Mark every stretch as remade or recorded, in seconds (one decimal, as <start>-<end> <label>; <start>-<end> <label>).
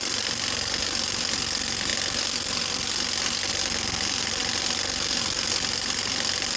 0.0-6.6 recorded